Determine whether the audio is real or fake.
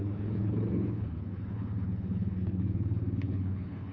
fake